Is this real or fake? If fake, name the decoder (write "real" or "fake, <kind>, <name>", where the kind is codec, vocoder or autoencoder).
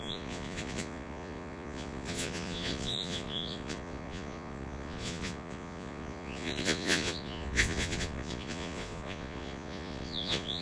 fake, vocoder, Vocos